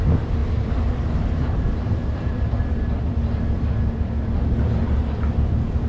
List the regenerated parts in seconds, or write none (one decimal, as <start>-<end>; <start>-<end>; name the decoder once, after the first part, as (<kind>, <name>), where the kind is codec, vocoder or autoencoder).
0.0-0.4 (vocoder, BigVGAN v2); 1.3-2.0; 5.5-5.9